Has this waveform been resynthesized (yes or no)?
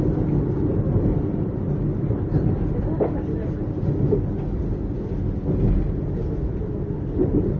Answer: no